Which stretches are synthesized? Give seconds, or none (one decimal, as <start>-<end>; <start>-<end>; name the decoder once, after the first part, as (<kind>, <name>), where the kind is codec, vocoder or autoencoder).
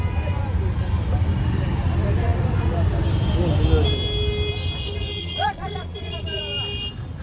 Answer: 5.2-6.4 (vocoder, Vocos)